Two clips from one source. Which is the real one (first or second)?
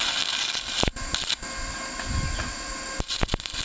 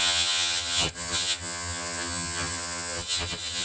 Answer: first